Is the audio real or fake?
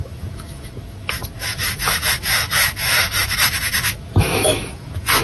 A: fake